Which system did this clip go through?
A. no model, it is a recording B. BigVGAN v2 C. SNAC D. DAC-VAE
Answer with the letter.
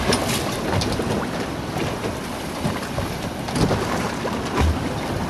A